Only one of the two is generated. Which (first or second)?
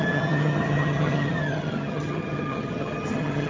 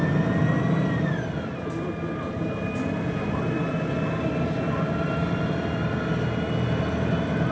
first